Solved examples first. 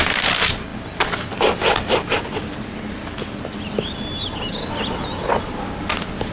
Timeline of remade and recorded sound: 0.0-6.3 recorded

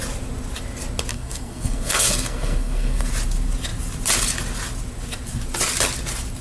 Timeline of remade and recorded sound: 0.0-1.1 recorded; 1.1-3.1 remade; 3.1-6.4 recorded

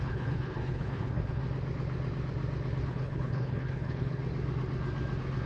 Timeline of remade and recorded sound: 0.0-1.4 remade; 1.4-2.8 recorded; 2.8-4.2 remade; 4.2-5.5 recorded

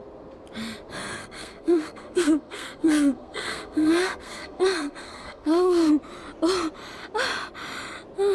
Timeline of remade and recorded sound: 0.0-1.2 recorded; 1.2-5.9 remade; 5.9-8.3 recorded

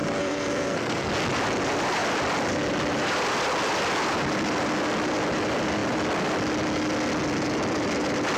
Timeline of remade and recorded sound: 0.0-1.1 remade; 1.1-8.4 recorded

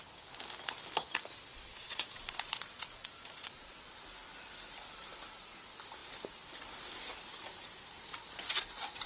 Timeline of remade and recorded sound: 0.0-1.5 recorded; 1.5-4.0 remade; 4.0-8.1 recorded; 8.1-8.6 remade; 8.6-9.1 recorded

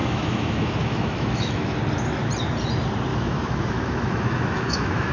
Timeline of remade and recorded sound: 0.0-1.8 remade; 1.8-3.1 recorded; 3.1-5.1 remade